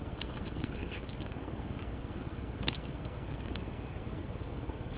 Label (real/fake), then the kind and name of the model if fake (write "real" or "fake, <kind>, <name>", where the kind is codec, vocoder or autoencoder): fake, codec, SNAC